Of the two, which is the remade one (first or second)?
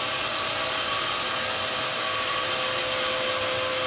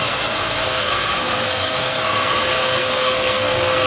second